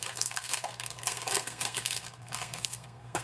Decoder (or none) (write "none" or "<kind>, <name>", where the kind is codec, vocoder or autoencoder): codec, SNAC